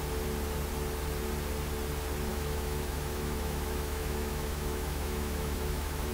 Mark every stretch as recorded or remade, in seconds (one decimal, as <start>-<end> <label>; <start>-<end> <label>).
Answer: 0.0-2.3 recorded; 2.3-6.1 remade